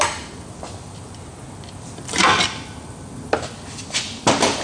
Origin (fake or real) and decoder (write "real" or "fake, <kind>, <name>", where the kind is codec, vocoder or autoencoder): real